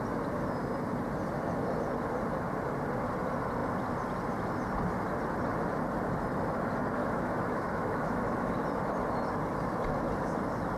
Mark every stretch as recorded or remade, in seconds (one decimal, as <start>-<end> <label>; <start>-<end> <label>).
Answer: 0.0-7.0 recorded; 7.0-8.5 remade; 8.5-10.8 recorded